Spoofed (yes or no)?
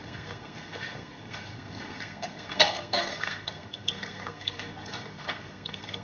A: yes